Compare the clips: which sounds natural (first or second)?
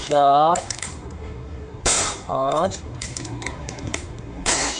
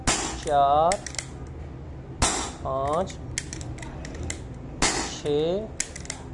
second